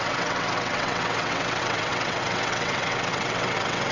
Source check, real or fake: fake